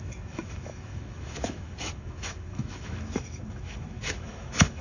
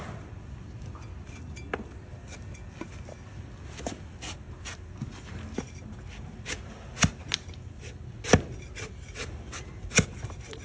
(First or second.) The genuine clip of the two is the second